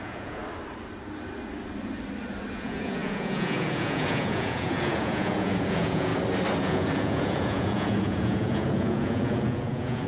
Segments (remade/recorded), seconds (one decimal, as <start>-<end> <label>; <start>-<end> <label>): 0.0-0.4 remade; 0.4-2.5 recorded; 2.5-6.1 remade; 6.1-6.6 recorded; 6.6-10.1 remade